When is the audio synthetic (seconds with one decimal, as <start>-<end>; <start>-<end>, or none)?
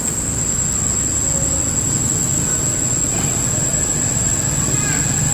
2.5-3.1; 3.7-4.4